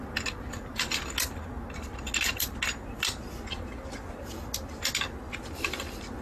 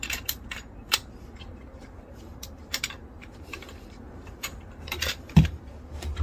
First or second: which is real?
first